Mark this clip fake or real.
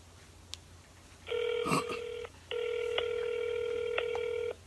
real